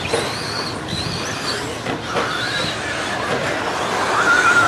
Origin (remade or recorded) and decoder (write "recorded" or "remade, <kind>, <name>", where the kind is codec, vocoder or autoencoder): recorded